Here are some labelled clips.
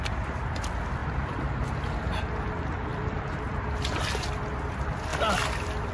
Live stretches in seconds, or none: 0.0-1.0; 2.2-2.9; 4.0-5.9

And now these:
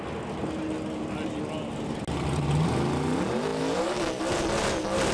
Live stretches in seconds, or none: 0.0-5.1

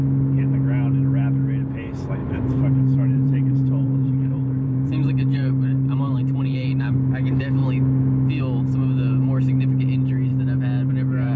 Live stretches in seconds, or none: 0.0-2.2; 7.1-11.4

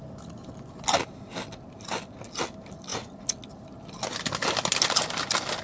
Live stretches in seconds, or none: 0.0-5.6

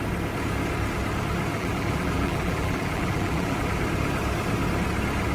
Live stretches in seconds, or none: 0.0-1.5; 3.7-5.3

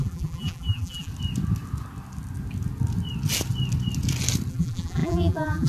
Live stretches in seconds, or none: 1.1-4.5

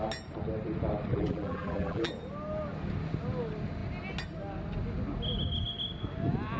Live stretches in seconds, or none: 0.0-1.1; 2.1-6.6